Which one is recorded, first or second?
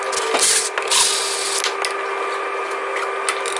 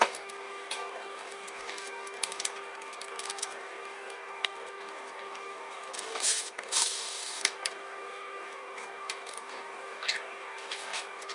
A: first